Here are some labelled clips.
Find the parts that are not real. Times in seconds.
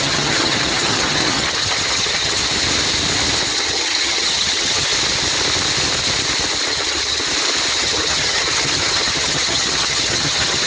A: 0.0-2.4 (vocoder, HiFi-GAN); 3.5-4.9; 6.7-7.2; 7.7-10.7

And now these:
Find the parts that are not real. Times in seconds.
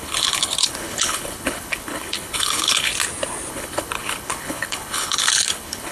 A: 0.0-2.9 (codec, HILCodec); 3.5-5.9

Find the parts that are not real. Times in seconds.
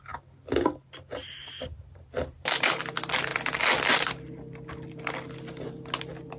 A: 1.1-2.8 (vocoder, BigVGAN v2)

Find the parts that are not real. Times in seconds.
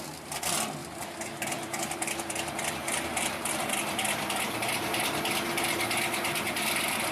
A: 0.8-3.7 (vocoder, BigVGAN v2)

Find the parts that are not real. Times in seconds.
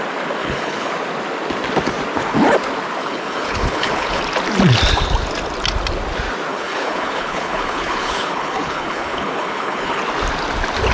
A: 0.4-0.9 (codec, HILCodec); 3.0-4.2; 6.5-10.0